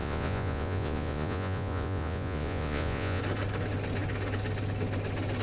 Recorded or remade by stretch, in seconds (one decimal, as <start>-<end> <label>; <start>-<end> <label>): 0.0-3.2 remade; 3.2-5.4 recorded